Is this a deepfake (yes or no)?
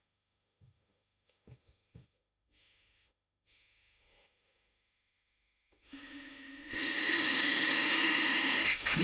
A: yes